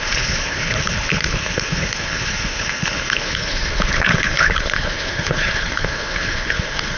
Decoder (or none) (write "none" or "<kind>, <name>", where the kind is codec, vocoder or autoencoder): codec, HILCodec